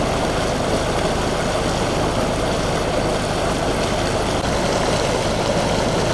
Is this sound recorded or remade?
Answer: recorded